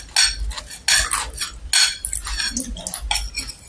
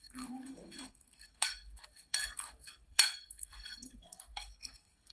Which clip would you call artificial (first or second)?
second